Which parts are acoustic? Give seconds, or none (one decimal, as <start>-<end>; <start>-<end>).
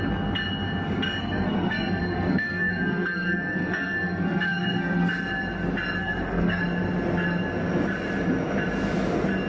0.0-1.2; 5.1-6.0; 6.6-9.5